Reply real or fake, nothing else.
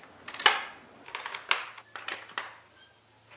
real